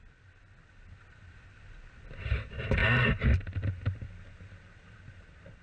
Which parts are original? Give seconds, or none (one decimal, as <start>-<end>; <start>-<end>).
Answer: 0.0-5.6